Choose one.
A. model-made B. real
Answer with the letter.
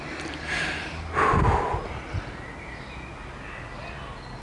B